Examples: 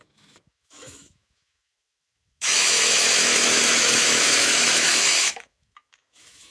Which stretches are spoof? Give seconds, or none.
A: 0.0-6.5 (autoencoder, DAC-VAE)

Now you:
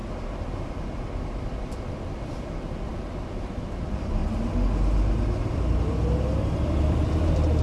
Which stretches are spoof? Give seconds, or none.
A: 0.7-4.2 (vocoder, BigVGAN v2); 5.5-7.6